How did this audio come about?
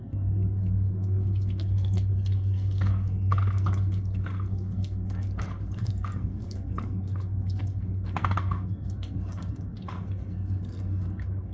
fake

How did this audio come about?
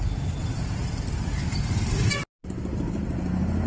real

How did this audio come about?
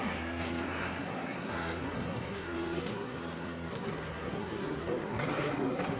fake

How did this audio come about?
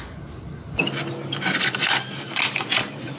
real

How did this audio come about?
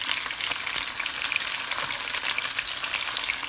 real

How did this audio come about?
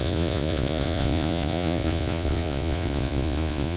fake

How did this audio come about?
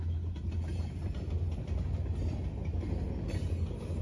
real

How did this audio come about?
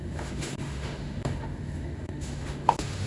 fake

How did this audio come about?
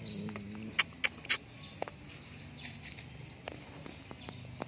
real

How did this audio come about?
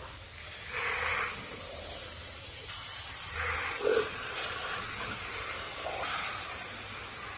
real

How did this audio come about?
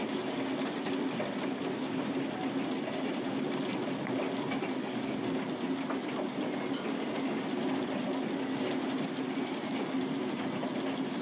real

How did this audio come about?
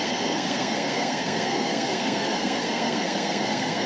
fake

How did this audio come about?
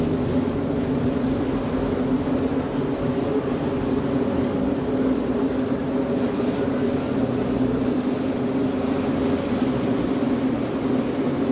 real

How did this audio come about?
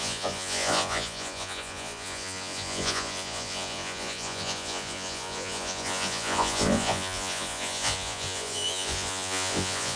fake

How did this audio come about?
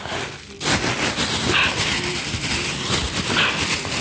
real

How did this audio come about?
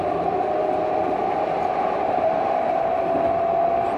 real